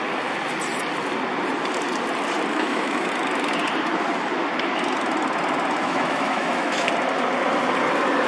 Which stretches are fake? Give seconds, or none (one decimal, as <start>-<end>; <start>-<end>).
2.5-3.1; 5.8-6.9

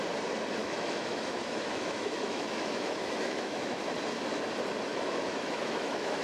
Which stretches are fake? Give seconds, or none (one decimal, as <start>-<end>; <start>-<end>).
0.6-3.8; 4.9-6.2

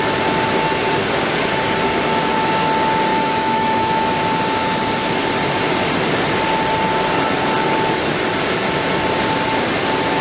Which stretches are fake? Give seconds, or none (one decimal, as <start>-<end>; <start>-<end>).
3.1-4.1

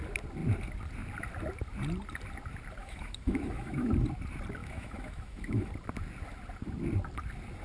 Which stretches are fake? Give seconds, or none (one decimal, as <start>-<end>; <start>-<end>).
2.8-3.9; 4.6-5.7